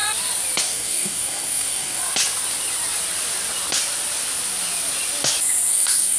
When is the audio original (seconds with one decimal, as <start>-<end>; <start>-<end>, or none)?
0.0-0.6; 2.0-5.7